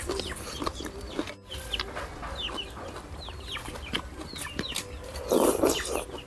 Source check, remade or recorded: recorded